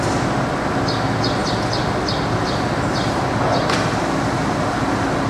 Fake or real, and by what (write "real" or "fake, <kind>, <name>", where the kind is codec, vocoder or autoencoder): real